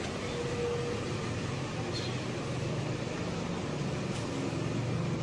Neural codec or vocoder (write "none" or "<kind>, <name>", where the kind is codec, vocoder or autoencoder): none